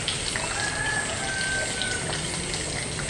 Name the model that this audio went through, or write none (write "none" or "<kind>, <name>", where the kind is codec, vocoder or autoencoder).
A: none